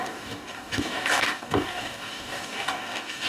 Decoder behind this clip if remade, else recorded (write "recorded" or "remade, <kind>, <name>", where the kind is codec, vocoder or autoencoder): remade, codec, DAC